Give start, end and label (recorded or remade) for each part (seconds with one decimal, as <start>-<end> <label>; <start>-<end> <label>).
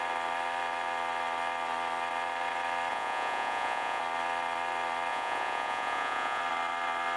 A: 0.0-2.9 recorded; 2.9-4.0 remade; 4.0-5.1 recorded; 5.1-6.4 remade; 6.4-7.2 recorded